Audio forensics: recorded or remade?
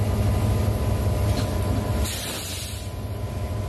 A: recorded